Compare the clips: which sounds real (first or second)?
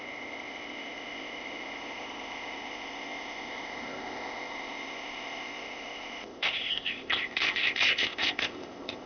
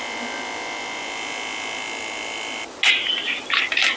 second